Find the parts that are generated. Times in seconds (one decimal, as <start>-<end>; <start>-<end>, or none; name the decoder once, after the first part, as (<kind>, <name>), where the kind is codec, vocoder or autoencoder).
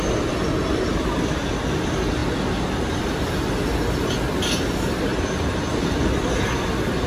5.1-5.8 (vocoder, BigVGAN v2)